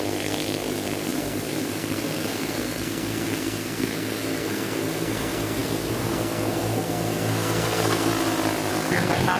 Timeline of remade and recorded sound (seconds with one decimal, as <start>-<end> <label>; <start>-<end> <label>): 0.0-8.1 remade; 8.1-8.7 recorded; 8.7-9.4 remade